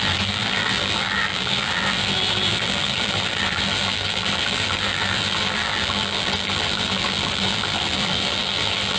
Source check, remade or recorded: remade